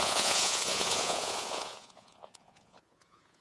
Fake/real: fake